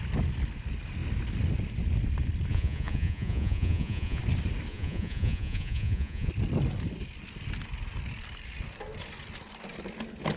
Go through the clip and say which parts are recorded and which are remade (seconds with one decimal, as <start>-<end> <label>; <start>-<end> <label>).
0.0-2.5 recorded; 2.5-4.2 remade; 4.2-4.7 recorded; 4.7-6.3 remade; 6.3-10.4 recorded